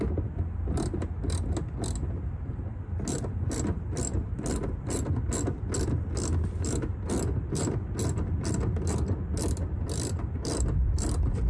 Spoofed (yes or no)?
no